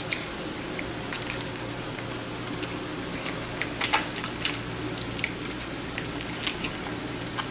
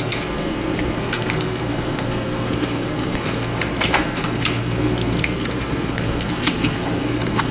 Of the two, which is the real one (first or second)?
first